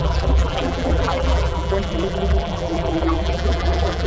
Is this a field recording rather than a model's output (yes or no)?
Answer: no